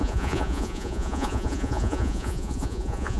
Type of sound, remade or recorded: remade